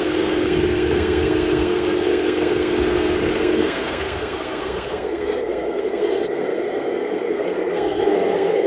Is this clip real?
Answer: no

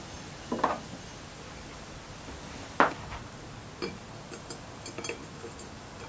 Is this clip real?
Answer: yes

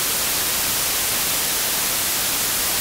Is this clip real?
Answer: yes